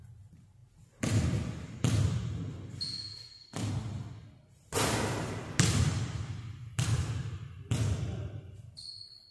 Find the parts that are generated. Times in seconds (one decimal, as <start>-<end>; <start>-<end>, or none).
none